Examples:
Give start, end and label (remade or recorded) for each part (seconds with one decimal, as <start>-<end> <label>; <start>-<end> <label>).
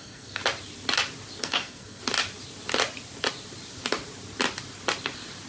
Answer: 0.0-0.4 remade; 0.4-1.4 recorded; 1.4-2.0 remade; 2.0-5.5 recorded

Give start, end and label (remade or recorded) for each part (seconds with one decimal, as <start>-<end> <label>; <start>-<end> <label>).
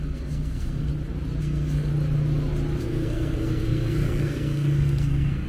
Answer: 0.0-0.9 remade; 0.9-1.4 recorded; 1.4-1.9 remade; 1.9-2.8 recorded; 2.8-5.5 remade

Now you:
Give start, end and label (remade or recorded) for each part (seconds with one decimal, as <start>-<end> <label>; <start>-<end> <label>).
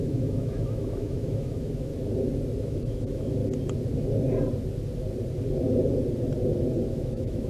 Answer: 0.0-1.9 remade; 1.9-2.6 recorded; 2.6-3.4 remade; 3.4-6.9 recorded; 6.9-7.5 remade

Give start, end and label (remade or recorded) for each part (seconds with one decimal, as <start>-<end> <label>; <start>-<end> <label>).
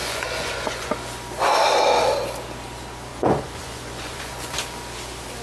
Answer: 0.0-0.9 remade; 0.9-3.1 recorded; 3.1-4.5 remade; 4.5-5.4 recorded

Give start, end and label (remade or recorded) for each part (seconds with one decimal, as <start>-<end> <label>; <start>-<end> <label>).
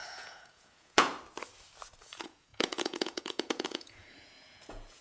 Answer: 0.0-1.1 remade; 1.1-2.0 recorded; 2.0-5.0 remade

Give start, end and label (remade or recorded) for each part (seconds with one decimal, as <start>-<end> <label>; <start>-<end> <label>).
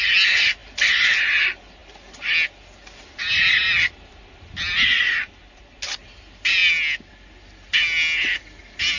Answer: 0.0-9.0 recorded